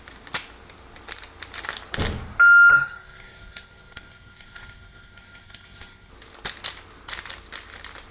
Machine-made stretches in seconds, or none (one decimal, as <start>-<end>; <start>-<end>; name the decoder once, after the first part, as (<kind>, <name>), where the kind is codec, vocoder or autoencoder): 2.7-6.1 (codec, SNAC)